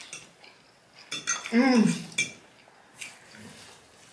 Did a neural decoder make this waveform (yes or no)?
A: no